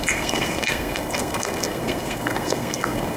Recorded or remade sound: remade